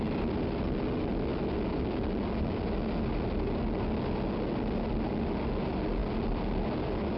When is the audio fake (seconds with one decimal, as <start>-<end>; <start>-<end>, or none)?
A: none